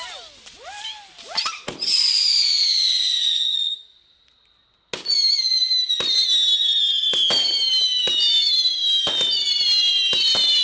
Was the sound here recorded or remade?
recorded